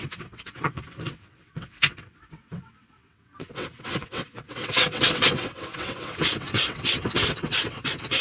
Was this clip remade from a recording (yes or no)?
yes